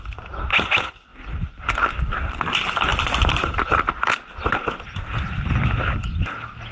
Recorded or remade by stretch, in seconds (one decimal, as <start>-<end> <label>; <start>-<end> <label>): 0.0-2.9 recorded; 2.9-3.8 remade; 3.8-6.7 recorded